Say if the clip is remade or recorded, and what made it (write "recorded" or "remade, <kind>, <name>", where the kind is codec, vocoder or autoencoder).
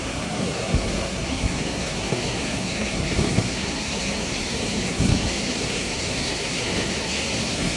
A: remade, codec, SNAC